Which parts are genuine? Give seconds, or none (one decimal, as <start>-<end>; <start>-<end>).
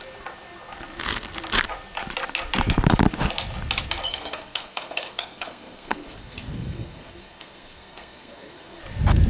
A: 0.0-4.1; 8.8-9.3